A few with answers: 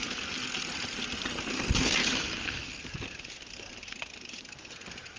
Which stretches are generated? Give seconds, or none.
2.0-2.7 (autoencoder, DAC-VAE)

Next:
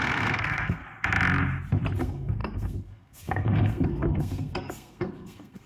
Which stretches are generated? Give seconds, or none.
0.0-0.8 (codec, SNAC); 2.0-5.7